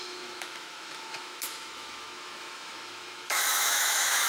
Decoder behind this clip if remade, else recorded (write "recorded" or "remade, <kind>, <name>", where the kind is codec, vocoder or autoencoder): remade, autoencoder, DAC-VAE